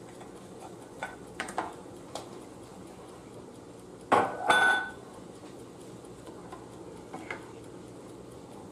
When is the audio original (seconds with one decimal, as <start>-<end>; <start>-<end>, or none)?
3.2-4.8; 6.4-8.1